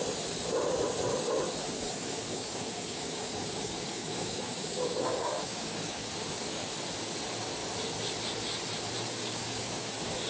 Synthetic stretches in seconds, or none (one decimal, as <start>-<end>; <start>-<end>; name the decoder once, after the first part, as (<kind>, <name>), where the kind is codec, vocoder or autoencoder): 1.6-6.7 (codec, DAC); 9.2-10.3